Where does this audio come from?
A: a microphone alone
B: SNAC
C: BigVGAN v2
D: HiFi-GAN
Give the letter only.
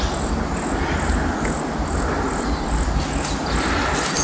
A